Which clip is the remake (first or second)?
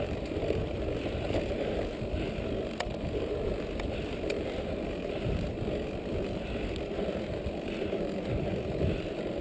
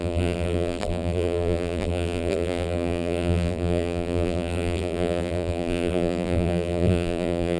second